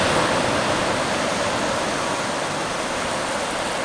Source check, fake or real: real